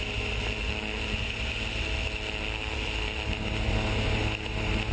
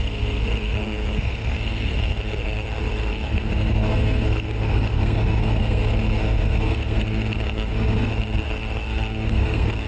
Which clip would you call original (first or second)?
first